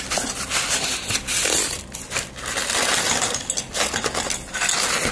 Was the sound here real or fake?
real